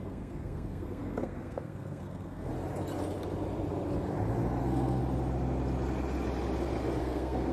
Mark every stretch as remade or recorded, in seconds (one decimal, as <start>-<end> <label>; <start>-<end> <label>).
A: 0.0-2.5 remade; 2.5-4.6 recorded; 4.6-5.0 remade; 5.0-7.0 recorded; 7.0-7.5 remade